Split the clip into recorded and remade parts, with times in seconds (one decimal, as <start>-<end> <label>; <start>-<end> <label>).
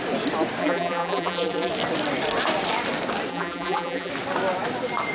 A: 0.0-0.6 recorded; 0.6-1.7 remade; 1.7-3.3 recorded; 3.3-4.1 remade; 4.1-5.1 recorded